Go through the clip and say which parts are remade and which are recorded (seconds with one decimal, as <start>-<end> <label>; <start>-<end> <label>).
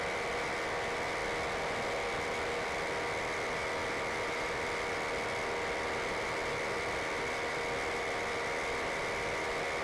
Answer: 0.0-9.8 recorded